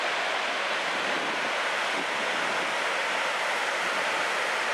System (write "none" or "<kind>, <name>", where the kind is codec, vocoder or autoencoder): none